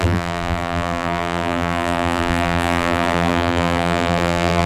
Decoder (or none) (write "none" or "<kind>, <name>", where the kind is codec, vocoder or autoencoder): vocoder, BigVGAN v2